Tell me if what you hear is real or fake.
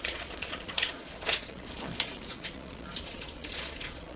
fake